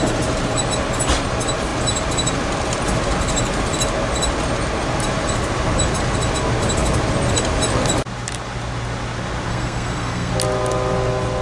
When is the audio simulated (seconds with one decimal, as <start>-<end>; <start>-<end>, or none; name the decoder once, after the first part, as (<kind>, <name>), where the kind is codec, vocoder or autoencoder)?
9.5-10.3 (codec, SNAC)